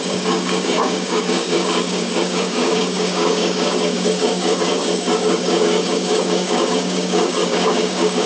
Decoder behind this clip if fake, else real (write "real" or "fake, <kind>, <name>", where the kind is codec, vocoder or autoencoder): fake, codec, DAC